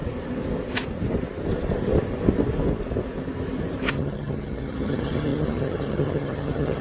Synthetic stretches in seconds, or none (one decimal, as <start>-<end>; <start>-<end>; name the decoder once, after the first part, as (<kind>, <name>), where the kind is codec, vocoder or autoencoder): 3.9-6.8 (vocoder, HiFi-GAN)